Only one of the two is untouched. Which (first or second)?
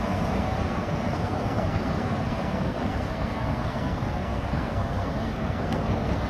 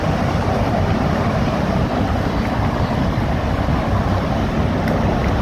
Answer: second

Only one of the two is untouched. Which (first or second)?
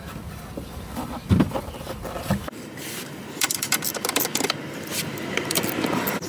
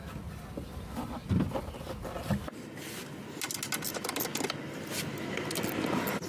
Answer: second